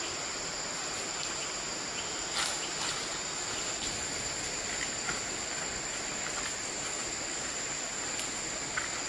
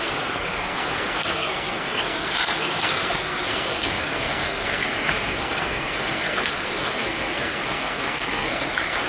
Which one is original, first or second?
first